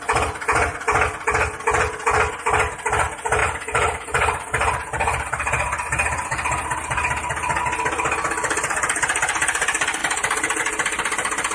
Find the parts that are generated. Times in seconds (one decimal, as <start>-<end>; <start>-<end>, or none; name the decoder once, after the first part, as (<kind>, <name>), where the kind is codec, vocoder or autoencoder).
3.4-7.6 (vocoder, BigVGAN v2); 10.0-10.6

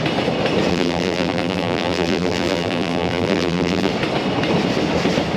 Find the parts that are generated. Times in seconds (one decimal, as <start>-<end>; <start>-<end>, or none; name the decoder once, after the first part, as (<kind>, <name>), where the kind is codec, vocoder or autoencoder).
0.7-3.9 (vocoder, BigVGAN v2)